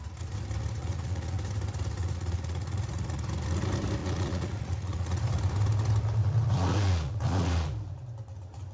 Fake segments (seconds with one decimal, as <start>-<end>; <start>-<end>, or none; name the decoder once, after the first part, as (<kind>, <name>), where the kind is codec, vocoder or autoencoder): 0.8-1.4 (vocoder, Vocos); 2.0-3.2; 4.0-5.2; 6.2-7.7